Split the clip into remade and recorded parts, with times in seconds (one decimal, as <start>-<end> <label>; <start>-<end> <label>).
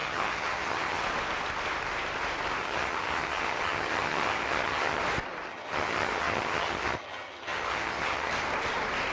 0.0-1.0 remade; 1.0-2.6 recorded; 2.6-5.0 remade; 5.0-5.5 recorded; 5.5-8.3 remade; 8.3-9.1 recorded